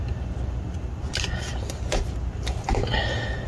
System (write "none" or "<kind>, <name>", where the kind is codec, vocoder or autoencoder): none